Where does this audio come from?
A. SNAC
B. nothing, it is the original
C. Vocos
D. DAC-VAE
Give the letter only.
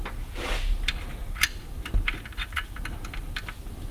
B